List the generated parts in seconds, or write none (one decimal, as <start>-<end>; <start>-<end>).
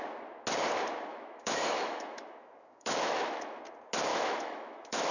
1.1-3.6; 4.1-5.1